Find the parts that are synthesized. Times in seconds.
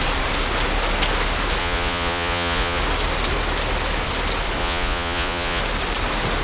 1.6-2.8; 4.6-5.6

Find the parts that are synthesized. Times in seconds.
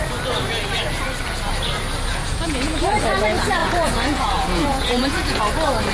2.1-2.8; 3.6-5.4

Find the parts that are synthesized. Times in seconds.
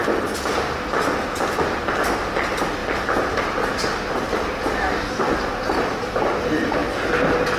4.8-5.3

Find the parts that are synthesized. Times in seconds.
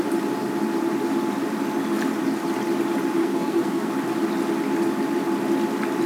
3.2-3.9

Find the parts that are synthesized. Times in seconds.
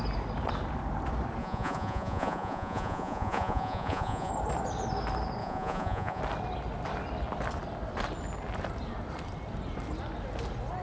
1.4-4.3; 5.4-6.2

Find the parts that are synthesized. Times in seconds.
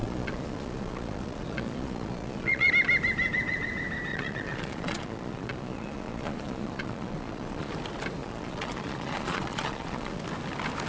0.0-2.7; 4.1-7.7; 8.2-10.2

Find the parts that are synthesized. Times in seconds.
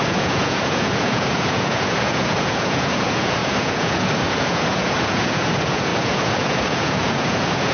0.0-7.7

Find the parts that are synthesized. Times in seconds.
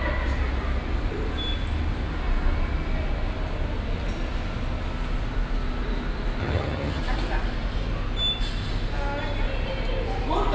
6.4-7.0